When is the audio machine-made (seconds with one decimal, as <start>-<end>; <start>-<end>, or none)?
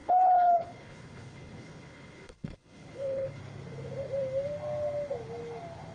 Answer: 0.0-3.4